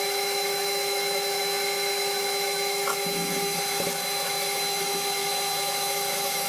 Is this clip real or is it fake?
fake